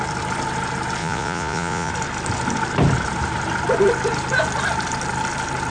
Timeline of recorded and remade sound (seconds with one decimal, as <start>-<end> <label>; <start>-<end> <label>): 0.0-1.0 recorded; 1.0-1.9 remade; 1.9-5.7 recorded

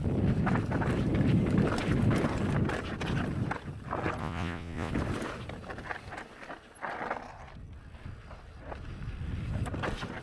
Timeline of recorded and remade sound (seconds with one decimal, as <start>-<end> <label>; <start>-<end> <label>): 0.0-4.2 recorded; 4.2-4.9 remade; 4.9-10.2 recorded

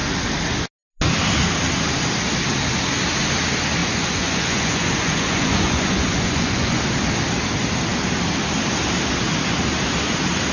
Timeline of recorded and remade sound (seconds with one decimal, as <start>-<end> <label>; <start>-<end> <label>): 0.0-3.8 recorded; 3.8-6.8 remade; 6.8-10.5 recorded

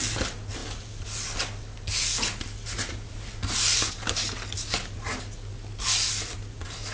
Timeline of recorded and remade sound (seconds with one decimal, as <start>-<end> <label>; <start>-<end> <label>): 0.0-6.9 recorded